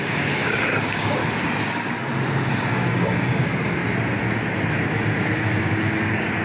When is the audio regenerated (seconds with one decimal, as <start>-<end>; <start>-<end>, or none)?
0.0-1.2; 2.5-3.8; 5.6-6.4